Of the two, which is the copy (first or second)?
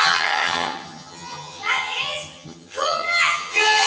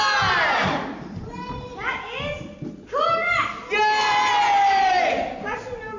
first